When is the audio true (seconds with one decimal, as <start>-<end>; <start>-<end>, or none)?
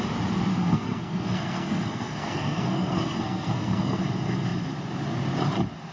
0.0-0.5; 4.0-5.9